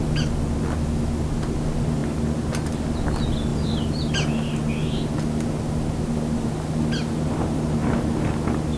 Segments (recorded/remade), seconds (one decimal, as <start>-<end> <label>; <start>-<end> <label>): 0.0-8.8 recorded